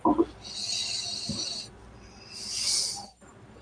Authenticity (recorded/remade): recorded